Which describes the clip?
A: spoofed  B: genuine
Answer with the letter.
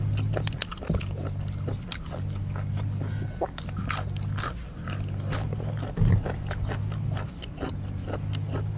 B